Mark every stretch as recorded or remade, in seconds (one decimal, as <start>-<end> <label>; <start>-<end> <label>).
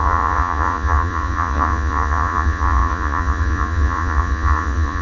0.0-5.0 remade